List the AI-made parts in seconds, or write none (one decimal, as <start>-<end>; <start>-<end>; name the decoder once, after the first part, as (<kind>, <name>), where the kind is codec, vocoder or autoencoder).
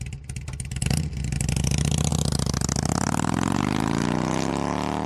none